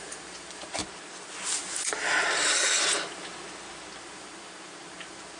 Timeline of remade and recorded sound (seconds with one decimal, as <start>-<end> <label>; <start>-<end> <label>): 0.0-0.8 remade; 0.8-4.0 recorded; 4.0-5.4 remade